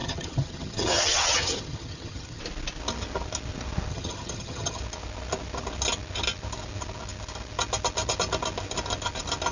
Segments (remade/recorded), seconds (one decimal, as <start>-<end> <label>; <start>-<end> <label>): 0.0-2.4 remade; 2.4-3.9 recorded; 3.9-4.8 remade; 4.8-9.5 recorded